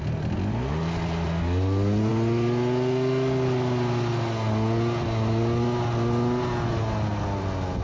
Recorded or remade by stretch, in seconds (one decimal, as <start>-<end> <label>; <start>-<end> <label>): 0.0-7.8 recorded